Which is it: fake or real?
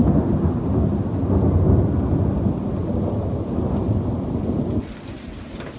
real